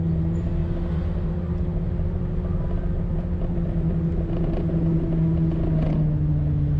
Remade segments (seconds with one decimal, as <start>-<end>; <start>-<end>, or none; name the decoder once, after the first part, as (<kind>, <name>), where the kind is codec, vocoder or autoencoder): none